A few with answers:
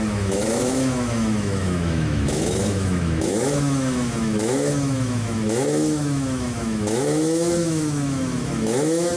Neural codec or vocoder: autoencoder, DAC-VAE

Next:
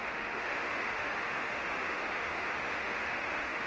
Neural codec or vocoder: autoencoder, DAC-VAE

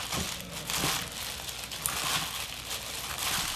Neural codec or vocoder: none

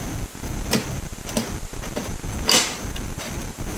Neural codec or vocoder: none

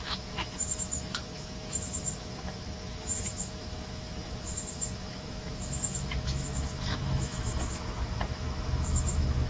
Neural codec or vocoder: autoencoder, DAC-VAE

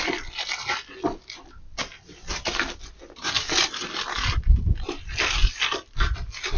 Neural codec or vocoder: none